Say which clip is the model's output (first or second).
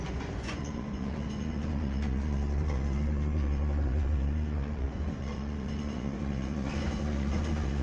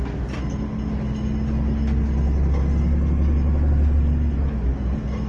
first